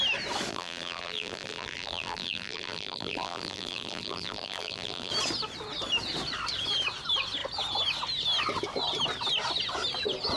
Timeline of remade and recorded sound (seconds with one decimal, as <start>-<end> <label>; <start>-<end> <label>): 0.0-0.5 recorded; 0.5-5.1 remade; 5.1-10.4 recorded